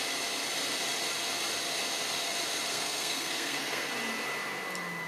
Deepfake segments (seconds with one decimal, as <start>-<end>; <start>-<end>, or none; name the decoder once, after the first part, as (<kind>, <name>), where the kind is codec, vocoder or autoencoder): 2.7-3.9 (codec, SNAC)